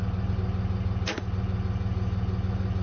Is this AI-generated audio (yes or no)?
no